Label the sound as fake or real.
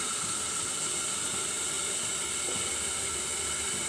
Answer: real